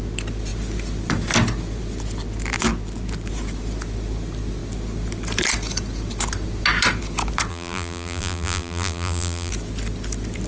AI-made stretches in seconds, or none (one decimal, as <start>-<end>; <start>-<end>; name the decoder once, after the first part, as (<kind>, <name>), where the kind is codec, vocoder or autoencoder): 7.5-9.5 (vocoder, BigVGAN v2)